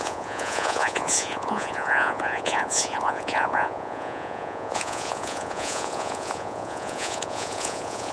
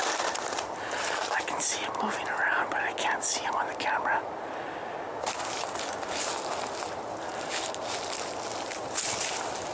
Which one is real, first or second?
second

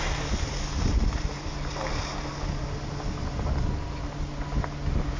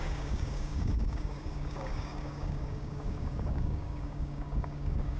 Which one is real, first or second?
first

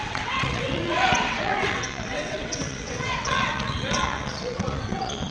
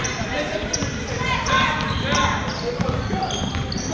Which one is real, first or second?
second